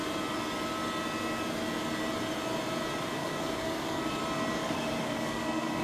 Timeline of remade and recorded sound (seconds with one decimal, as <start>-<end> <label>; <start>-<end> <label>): 0.0-3.2 recorded; 3.2-4.0 remade; 4.0-4.6 recorded; 4.6-5.8 remade

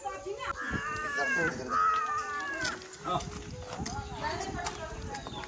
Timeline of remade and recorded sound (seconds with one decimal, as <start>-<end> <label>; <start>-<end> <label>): 0.0-5.5 recorded

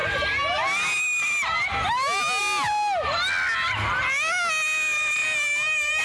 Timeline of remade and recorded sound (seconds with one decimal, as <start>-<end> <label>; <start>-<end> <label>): 0.0-5.2 recorded; 5.2-6.0 remade

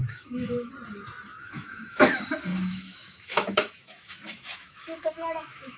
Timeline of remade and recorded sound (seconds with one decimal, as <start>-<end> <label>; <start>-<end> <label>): 0.0-0.7 remade; 0.7-1.3 recorded; 1.3-2.1 remade; 2.1-2.5 recorded; 2.5-5.8 remade

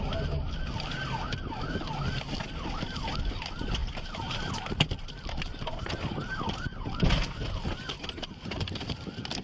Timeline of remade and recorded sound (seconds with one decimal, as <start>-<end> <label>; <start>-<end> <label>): 0.0-3.8 recorded; 3.8-4.5 remade; 4.5-9.4 recorded

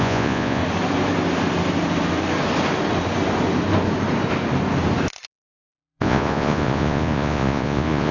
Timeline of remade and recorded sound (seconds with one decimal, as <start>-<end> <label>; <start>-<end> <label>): 0.0-0.6 remade; 0.6-5.3 recorded; 5.3-8.1 remade

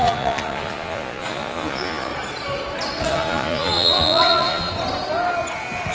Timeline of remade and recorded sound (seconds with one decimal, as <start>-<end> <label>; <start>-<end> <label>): 0.0-2.1 remade; 2.1-3.0 recorded; 3.0-4.7 remade; 4.7-5.9 recorded

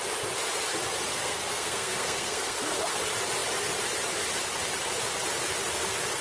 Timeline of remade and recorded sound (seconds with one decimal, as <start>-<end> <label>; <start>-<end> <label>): 0.0-1.1 recorded; 1.1-2.9 remade; 2.9-6.2 recorded